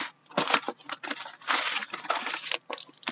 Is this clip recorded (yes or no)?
yes